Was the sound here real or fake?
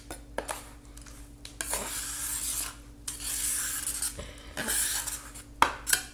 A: real